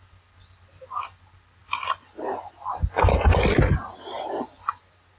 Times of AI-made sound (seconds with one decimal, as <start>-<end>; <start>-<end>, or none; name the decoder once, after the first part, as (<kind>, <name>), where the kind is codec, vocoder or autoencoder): none